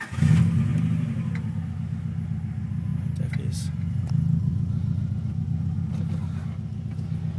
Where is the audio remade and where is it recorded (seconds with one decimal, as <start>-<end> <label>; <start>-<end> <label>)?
0.0-7.4 recorded